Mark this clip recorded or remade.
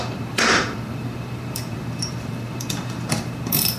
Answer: remade